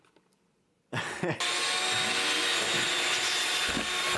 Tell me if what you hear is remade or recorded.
recorded